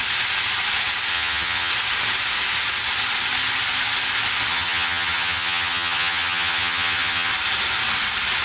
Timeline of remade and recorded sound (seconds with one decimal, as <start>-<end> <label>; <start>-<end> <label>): 0.0-1.1 recorded; 1.1-1.7 remade; 1.7-4.5 recorded; 4.5-7.3 remade; 7.3-8.4 recorded